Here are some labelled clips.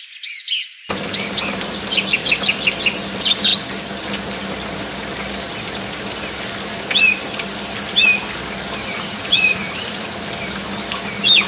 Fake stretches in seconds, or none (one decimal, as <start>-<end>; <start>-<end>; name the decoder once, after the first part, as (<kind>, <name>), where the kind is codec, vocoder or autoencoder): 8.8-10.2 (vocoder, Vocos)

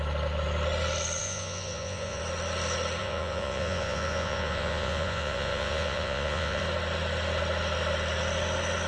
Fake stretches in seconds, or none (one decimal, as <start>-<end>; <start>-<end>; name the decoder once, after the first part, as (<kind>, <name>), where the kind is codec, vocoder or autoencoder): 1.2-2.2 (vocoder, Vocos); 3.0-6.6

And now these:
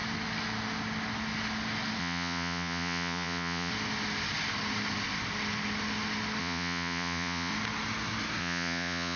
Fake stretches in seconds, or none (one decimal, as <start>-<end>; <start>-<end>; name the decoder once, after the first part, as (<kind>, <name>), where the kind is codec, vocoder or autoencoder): 2.0-3.7 (vocoder, Vocos); 6.4-7.5; 8.4-9.2

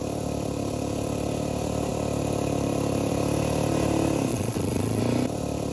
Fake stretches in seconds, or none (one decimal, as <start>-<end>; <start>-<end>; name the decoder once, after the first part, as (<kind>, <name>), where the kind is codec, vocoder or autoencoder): 4.3-5.0 (vocoder, Vocos)

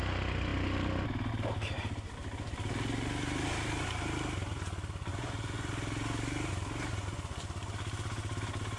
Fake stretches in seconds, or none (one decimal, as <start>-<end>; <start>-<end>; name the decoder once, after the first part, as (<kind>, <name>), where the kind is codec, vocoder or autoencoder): 5.1-5.7 (vocoder, Vocos)

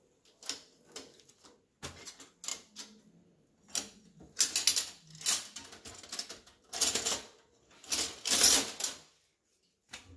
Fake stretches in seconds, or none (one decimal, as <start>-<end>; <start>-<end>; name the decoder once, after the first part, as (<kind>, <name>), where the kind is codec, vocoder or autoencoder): none

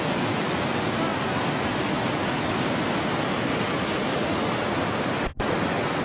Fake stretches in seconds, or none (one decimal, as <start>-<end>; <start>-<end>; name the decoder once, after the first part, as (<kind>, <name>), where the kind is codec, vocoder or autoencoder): none